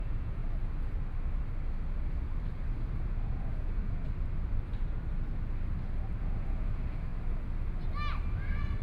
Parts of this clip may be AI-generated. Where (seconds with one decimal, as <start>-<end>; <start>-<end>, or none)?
0.0-0.4; 2.7-4.0; 6.2-7.1